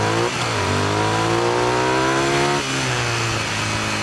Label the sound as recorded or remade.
recorded